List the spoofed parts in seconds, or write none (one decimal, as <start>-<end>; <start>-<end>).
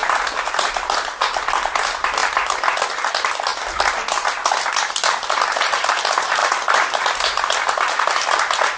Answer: 0.5-8.8